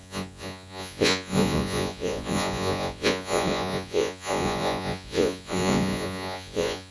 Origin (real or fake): fake